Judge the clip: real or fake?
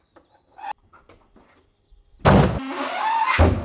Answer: real